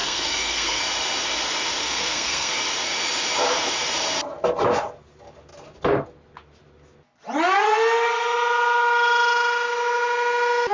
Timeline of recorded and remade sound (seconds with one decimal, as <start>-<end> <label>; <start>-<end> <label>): 0.0-0.8 remade; 0.8-1.8 recorded; 1.8-2.5 remade; 2.5-10.7 recorded